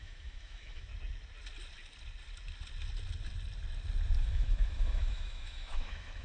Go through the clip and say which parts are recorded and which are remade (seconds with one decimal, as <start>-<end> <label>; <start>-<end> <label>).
0.0-0.9 remade; 0.9-4.2 recorded; 4.2-6.2 remade